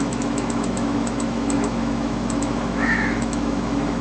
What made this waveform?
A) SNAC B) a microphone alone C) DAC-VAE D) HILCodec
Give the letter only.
C